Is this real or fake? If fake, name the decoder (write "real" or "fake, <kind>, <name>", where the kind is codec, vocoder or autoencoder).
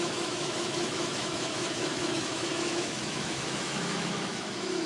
fake, autoencoder, DAC-VAE